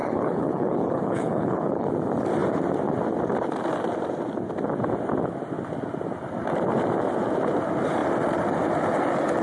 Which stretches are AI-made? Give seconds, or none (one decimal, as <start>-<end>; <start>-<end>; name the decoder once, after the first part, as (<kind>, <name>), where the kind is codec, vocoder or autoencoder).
0.0-1.9 (codec, HILCodec)